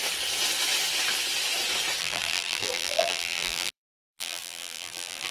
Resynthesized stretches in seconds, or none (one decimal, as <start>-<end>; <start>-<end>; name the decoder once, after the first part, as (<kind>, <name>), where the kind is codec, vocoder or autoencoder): 2.0-5.3 (vocoder, BigVGAN v2)